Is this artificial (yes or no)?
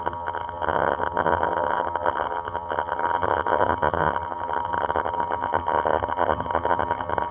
yes